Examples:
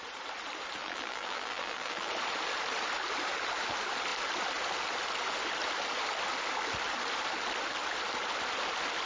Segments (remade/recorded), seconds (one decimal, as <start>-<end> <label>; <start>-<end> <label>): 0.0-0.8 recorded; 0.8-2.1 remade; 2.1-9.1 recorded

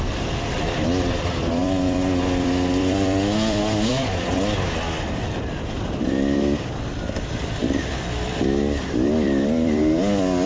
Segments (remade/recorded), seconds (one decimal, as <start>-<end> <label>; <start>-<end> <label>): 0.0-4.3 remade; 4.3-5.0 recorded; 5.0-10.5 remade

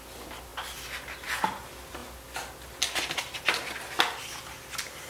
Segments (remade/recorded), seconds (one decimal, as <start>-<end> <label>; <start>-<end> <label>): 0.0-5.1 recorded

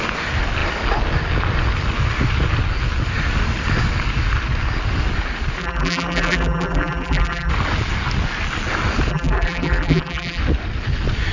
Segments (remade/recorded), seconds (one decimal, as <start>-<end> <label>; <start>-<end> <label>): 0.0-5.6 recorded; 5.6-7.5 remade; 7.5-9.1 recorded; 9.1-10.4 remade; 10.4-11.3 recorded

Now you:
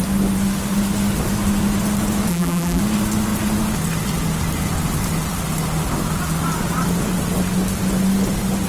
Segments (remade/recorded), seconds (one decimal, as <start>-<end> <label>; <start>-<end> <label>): 0.0-2.3 recorded; 2.3-2.8 remade; 2.8-8.7 recorded

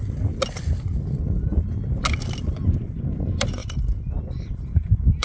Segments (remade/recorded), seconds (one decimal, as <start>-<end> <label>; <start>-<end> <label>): 0.0-3.1 recorded; 3.1-3.6 remade; 3.6-4.3 recorded; 4.3-5.2 remade